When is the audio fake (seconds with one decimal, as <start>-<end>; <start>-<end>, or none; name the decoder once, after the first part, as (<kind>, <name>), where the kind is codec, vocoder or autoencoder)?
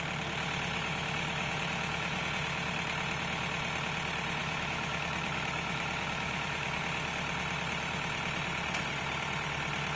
0.7-2.2 (autoencoder, DAC-VAE); 4.4-6.8